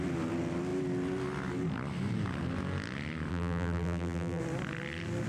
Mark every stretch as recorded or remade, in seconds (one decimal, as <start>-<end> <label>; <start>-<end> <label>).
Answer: 0.0-3.3 recorded; 3.3-4.4 remade; 4.4-5.3 recorded